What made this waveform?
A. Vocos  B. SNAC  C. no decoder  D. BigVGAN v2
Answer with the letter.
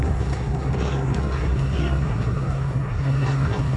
B